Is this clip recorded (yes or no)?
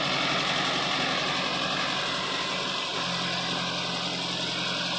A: yes